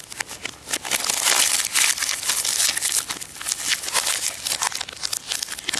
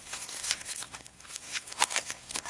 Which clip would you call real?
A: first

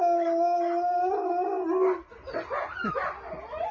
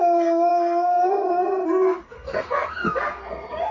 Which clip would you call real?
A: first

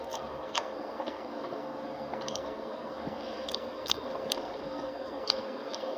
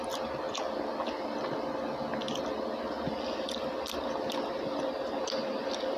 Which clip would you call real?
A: second